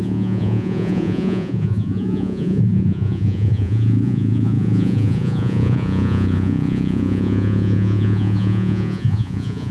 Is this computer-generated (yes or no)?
yes